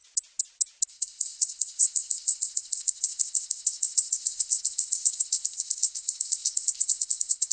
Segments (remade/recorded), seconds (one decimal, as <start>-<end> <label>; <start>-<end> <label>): 0.0-0.9 recorded; 0.9-7.5 remade

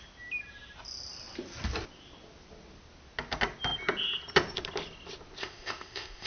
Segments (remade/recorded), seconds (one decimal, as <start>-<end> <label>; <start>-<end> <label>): 0.0-5.4 recorded; 5.4-6.3 remade

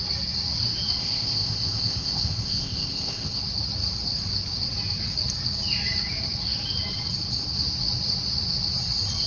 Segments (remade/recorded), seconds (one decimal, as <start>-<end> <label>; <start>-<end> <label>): 0.0-1.0 recorded; 1.0-3.4 remade; 3.4-9.3 recorded

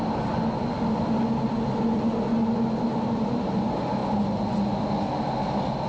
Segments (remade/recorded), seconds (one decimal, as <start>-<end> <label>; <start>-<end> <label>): 0.0-5.9 recorded

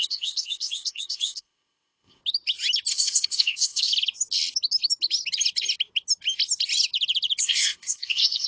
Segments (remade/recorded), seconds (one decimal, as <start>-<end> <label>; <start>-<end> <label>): 0.0-2.2 remade; 2.2-2.9 recorded; 2.9-3.9 remade; 3.9-7.4 recorded; 7.4-8.5 remade

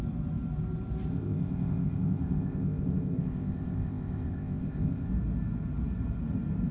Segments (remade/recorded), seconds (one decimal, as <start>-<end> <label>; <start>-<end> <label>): 0.0-1.1 recorded; 1.1-5.1 remade; 5.1-6.7 recorded

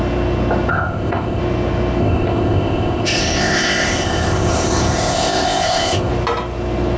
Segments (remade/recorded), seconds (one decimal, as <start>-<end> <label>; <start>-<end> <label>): 0.0-0.7 recorded; 0.7-1.4 remade; 1.4-2.0 recorded; 2.0-6.1 remade; 6.1-7.0 recorded